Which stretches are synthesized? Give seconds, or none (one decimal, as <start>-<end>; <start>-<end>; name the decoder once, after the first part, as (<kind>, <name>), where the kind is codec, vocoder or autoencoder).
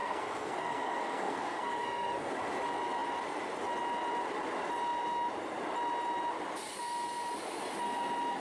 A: 0.0-2.3 (codec, SNAC)